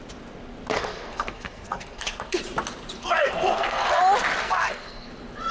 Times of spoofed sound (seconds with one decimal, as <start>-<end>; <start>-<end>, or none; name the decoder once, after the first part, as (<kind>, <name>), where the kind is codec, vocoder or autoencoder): 0.7-2.4 (codec, SNAC); 3.0-4.0; 4.4-5.1